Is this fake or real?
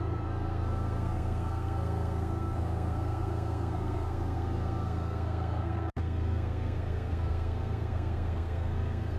fake